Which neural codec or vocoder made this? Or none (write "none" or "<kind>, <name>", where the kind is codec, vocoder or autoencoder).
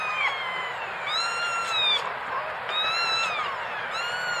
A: none